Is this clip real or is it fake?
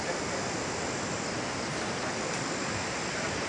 real